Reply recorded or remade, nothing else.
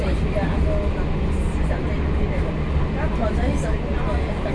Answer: recorded